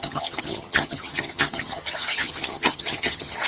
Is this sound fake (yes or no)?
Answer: yes